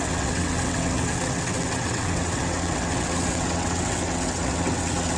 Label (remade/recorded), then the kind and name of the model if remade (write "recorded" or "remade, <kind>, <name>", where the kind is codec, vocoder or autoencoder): remade, vocoder, WaveNeXt